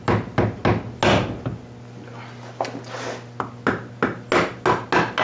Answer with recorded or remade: recorded